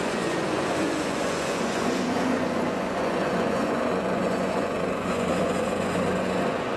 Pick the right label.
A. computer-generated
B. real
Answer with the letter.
A